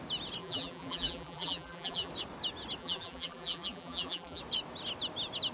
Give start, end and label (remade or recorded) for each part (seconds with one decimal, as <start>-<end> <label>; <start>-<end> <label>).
0.0-0.4 recorded; 0.4-2.1 remade; 2.1-2.8 recorded; 2.8-4.4 remade; 4.4-5.5 recorded